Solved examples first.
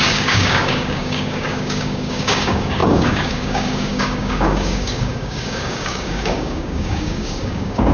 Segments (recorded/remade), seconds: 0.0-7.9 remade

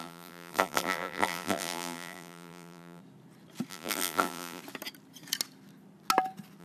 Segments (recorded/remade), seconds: 0.0-3.0 remade; 3.0-3.7 recorded; 3.7-4.6 remade; 4.6-6.6 recorded

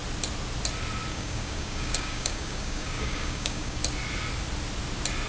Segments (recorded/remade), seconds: 0.0-1.1 recorded; 1.1-3.8 remade; 3.8-5.3 recorded

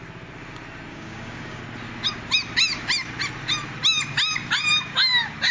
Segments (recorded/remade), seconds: 0.0-0.9 recorded; 0.9-1.6 remade; 1.6-5.5 recorded

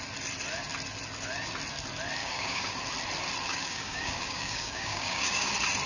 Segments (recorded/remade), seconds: 0.0-2.2 recorded; 2.2-2.7 remade; 2.7-3.5 recorded; 3.5-5.5 remade; 5.5-5.9 recorded